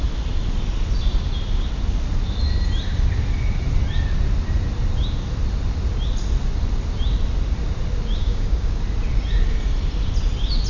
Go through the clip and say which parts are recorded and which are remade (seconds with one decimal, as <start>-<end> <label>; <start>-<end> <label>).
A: 0.0-8.2 recorded; 8.2-8.8 remade; 8.8-10.7 recorded